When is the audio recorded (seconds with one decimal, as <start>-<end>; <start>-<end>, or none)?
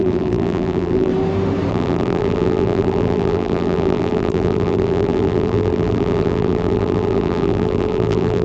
1.1-1.7